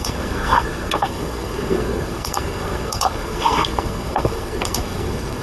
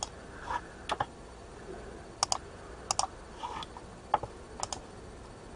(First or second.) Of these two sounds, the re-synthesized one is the first